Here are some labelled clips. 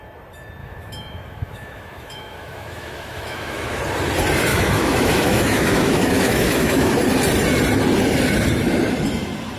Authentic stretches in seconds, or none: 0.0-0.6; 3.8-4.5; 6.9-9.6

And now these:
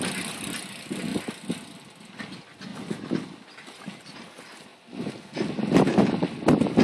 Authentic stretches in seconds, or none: 0.0-6.8

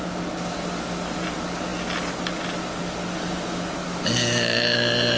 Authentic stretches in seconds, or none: 0.0-5.2

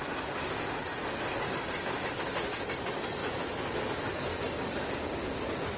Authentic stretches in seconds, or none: 0.0-3.2; 3.8-5.8